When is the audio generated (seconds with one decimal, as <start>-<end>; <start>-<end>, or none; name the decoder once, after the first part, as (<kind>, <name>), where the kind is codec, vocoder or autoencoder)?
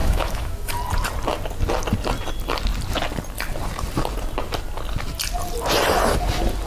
0.0-0.7 (autoencoder, DAC-VAE)